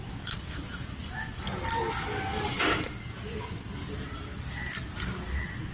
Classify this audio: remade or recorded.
recorded